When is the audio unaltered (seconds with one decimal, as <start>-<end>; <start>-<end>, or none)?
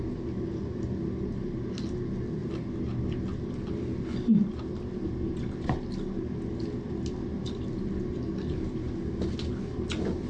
0.0-10.3